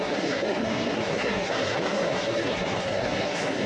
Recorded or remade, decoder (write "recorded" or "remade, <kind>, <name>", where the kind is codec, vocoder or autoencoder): remade, codec, SNAC